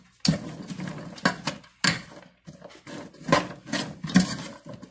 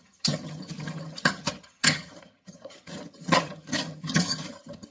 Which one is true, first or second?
first